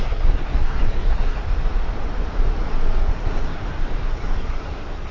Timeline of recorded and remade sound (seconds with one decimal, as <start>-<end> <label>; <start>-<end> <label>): 0.0-1.4 remade; 1.4-3.1 recorded; 3.1-3.6 remade; 3.6-4.1 recorded; 4.1-5.1 remade